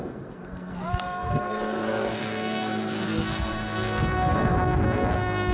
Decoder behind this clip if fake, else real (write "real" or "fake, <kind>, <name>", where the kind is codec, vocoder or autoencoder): fake, codec, SNAC